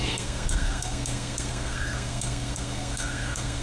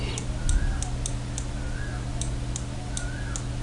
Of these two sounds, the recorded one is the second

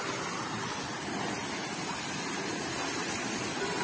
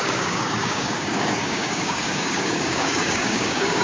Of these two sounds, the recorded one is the first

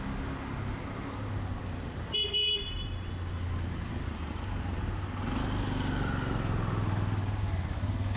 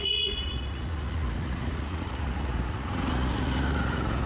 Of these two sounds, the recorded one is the first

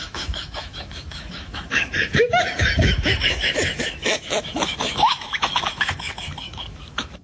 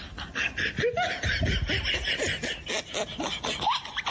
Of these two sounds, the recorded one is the second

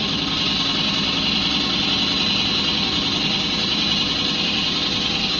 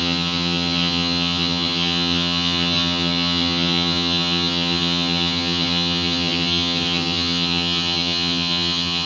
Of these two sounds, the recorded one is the first